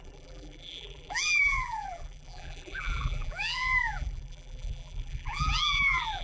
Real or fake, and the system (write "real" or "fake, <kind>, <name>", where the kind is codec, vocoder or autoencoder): fake, vocoder, BigVGAN v2